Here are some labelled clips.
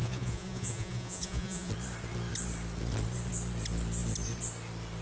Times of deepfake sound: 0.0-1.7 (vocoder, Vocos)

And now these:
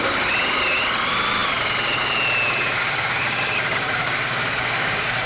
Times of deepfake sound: 2.8-5.3 (codec, DAC)

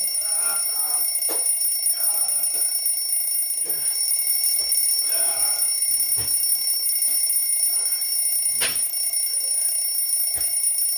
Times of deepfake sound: none

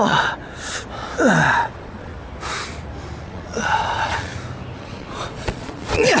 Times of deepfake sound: 0.0-0.4 (vocoder, Vocos); 1.5-2.1; 3.2-4.3; 4.8-6.2

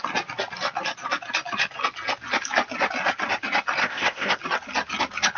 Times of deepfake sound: 3.8-4.4 (codec, ZipCodec)

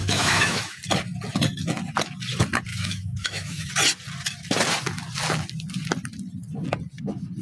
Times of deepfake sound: 0.0-0.8 (autoencoder, DAC-VAE); 2.7-3.7